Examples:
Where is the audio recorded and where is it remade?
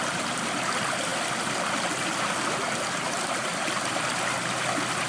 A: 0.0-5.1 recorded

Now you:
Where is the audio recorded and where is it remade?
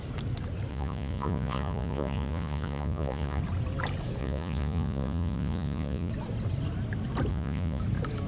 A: 0.0-0.7 recorded; 0.7-3.4 remade; 3.4-4.2 recorded; 4.2-6.1 remade; 6.1-7.3 recorded; 7.3-7.8 remade; 7.8-8.3 recorded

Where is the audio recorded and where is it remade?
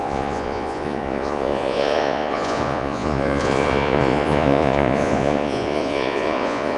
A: 0.0-6.8 remade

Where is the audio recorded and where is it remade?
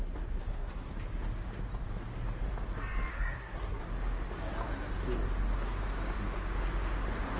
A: 0.0-0.4 recorded; 0.4-0.9 remade; 0.9-3.1 recorded; 3.1-3.8 remade; 3.8-7.4 recorded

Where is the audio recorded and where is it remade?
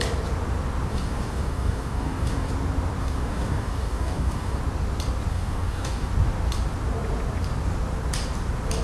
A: 0.0-0.9 recorded; 0.9-2.5 remade; 2.5-3.0 recorded; 3.0-4.6 remade; 4.6-5.3 recorded; 5.3-6.1 remade; 6.1-8.8 recorded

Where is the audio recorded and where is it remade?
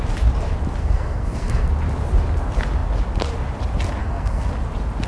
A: 0.0-0.8 recorded; 0.8-1.7 remade; 1.7-4.0 recorded; 4.0-4.5 remade; 4.5-5.1 recorded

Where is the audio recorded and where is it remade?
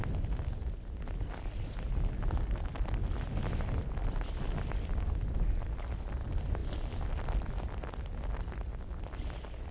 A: 0.0-6.6 recorded; 6.6-7.8 remade; 7.8-9.7 recorded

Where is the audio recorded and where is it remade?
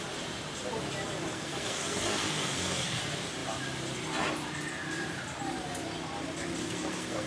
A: 0.0-1.3 recorded; 1.3-3.0 remade; 3.0-6.6 recorded; 6.6-7.3 remade